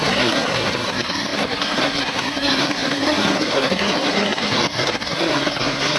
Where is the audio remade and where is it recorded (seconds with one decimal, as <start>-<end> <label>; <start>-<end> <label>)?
0.0-6.0 remade